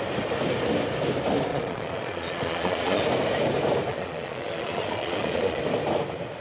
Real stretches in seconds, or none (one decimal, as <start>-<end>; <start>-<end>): 0.0-1.5; 3.0-3.9; 5.6-6.4